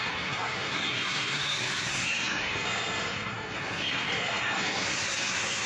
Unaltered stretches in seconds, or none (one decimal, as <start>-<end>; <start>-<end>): none